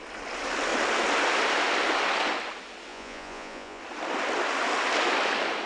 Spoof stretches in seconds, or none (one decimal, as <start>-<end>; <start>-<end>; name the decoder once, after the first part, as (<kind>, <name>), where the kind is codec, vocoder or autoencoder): 2.9-3.8 (vocoder, Vocos)